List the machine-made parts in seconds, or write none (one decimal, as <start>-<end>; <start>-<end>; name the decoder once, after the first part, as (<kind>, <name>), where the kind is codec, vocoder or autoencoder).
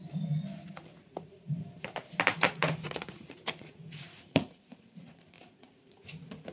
0.9-1.6 (vocoder, Vocos); 2.3-6.5